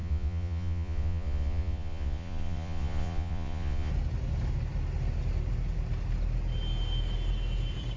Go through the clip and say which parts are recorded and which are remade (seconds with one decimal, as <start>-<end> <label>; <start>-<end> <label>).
0.0-3.9 remade; 3.9-8.0 recorded